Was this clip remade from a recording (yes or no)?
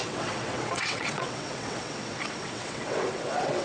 yes